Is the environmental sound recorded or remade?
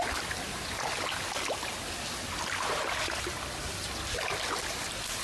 recorded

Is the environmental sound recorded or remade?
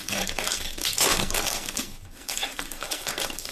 remade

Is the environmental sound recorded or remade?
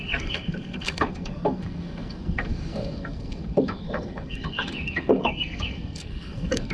remade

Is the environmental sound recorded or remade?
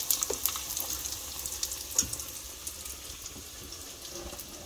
recorded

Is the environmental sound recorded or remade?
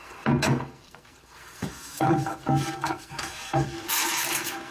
remade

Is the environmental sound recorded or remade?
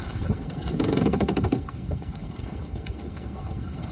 remade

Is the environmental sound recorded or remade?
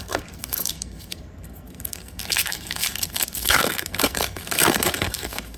remade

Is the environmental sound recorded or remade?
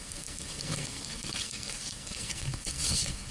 remade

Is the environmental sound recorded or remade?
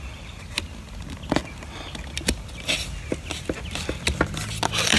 recorded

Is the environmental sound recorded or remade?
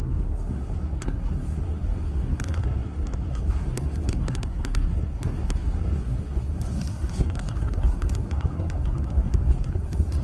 remade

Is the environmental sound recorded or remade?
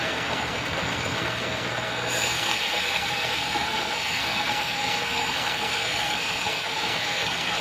remade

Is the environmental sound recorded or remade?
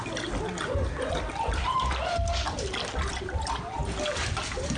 recorded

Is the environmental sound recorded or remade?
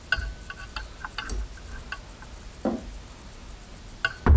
recorded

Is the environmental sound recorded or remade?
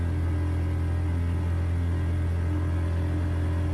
recorded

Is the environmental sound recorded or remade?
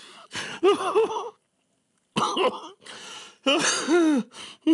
recorded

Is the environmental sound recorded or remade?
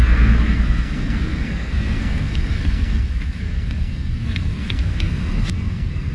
remade